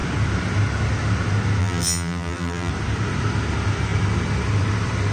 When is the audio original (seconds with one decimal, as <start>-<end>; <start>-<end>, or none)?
0.0-1.6; 2.7-5.1